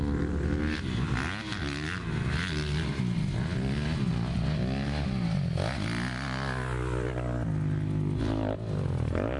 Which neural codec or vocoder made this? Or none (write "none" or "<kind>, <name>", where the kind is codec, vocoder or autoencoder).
none